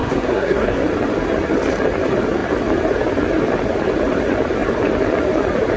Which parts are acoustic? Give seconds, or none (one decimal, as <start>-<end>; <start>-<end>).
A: 0.8-5.8